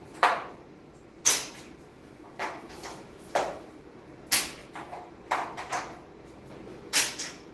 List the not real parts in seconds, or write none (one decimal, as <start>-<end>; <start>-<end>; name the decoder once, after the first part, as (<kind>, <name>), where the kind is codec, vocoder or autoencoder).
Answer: 1.9-3.7 (autoencoder, DAC-VAE); 6.7-7.5